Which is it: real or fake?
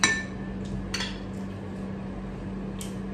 real